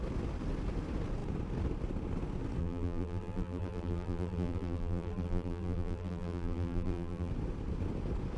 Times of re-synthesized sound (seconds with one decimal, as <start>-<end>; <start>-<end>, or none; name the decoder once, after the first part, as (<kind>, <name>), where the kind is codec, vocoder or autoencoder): 2.6-7.3 (vocoder, BigVGAN v2)